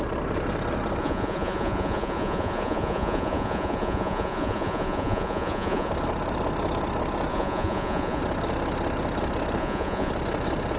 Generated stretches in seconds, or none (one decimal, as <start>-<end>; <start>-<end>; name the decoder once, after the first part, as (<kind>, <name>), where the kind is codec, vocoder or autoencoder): 1.0-5.9 (vocoder, Vocos); 7.3-8.2; 9.6-10.1